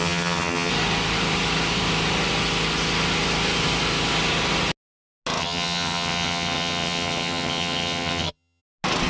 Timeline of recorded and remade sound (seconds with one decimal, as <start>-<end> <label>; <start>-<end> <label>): 0.0-0.7 remade; 0.7-5.4 recorded; 5.4-8.6 remade; 8.6-9.1 recorded